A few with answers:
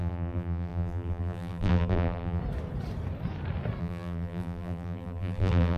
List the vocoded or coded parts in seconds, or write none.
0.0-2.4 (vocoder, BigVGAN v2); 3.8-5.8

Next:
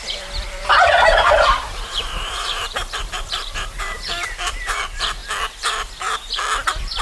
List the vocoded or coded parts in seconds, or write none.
0.6-4.8 (vocoder, BigVGAN v2)

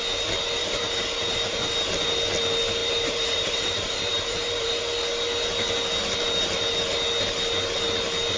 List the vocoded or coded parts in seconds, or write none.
0.6-1.6 (vocoder, BigVGAN v2); 2.8-4.8

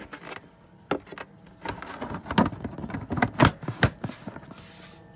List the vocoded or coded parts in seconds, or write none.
3.4-4.1 (vocoder, BigVGAN v2)

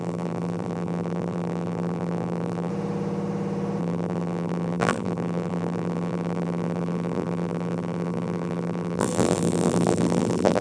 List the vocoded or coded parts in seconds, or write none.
0.0-2.7 (vocoder, BigVGAN v2); 3.8-10.6

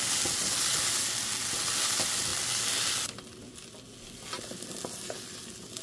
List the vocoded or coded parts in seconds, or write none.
none

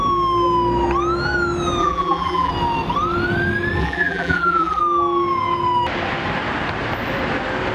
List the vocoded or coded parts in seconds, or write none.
1.8-2.5 (vocoder, BigVGAN v2); 3.8-4.8